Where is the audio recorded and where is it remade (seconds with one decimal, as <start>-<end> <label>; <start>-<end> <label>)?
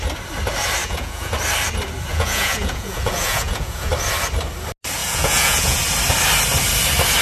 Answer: 0.0-0.8 recorded; 0.8-1.3 remade; 1.3-2.1 recorded; 2.1-3.9 remade; 3.9-5.0 recorded; 5.0-5.8 remade; 5.8-7.2 recorded